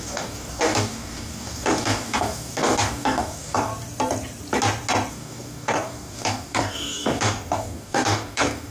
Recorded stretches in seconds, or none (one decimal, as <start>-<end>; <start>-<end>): 3.7-5.1